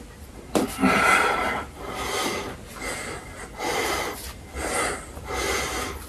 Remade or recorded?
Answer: recorded